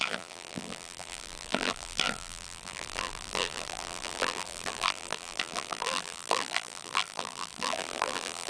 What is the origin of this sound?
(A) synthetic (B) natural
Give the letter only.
A